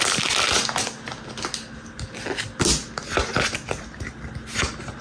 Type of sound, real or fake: real